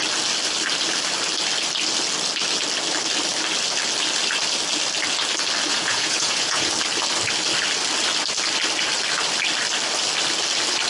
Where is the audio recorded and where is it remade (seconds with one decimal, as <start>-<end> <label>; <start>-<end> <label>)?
0.0-5.7 recorded; 5.7-6.7 remade; 6.7-10.9 recorded